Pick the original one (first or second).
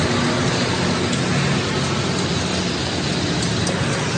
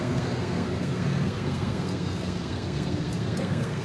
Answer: first